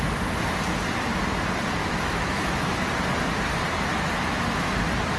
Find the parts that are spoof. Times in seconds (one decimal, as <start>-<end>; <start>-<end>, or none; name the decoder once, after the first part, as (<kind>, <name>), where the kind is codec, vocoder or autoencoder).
1.8-2.8 (autoencoder, DAC-VAE); 3.9-4.7